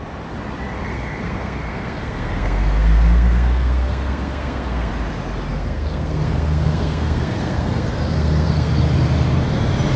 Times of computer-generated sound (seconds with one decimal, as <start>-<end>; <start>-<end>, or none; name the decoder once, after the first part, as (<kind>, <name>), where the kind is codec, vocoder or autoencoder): 0.8-4.9 (codec, SNAC); 5.5-8.7